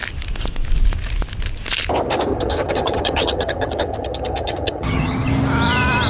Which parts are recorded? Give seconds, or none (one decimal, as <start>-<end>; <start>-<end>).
0.0-2.3; 5.3-6.1